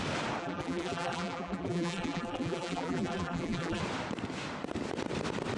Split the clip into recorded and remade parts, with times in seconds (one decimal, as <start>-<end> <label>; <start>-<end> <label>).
0.0-0.4 recorded; 0.4-3.8 remade; 3.8-5.6 recorded